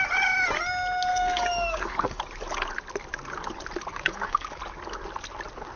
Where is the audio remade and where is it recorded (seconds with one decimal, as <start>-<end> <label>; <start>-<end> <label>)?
0.0-1.1 recorded; 1.1-2.2 remade; 2.2-3.9 recorded; 3.9-4.6 remade; 4.6-5.8 recorded